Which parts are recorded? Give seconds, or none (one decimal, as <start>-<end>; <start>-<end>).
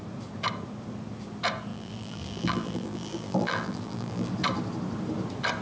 0.0-1.7; 4.3-5.6